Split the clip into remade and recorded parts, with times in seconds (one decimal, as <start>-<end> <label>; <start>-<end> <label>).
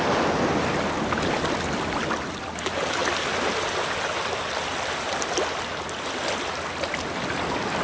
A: 0.0-7.8 recorded